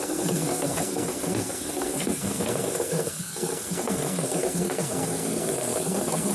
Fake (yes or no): yes